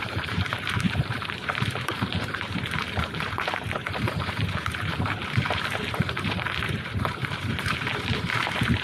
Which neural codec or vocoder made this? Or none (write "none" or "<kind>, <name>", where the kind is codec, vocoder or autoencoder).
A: vocoder, BigVGAN v2